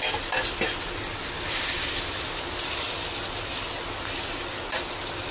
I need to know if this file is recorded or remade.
recorded